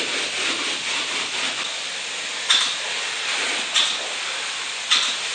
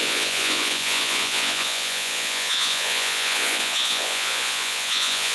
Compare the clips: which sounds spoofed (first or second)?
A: second